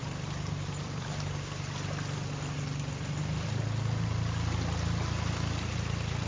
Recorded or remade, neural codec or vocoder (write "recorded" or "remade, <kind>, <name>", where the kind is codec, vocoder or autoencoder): recorded